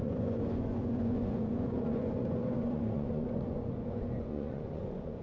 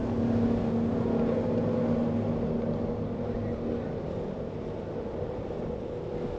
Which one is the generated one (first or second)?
first